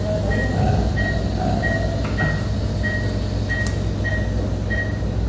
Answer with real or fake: real